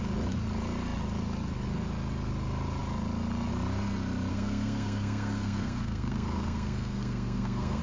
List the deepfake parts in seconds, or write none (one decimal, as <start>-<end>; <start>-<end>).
4.3-7.8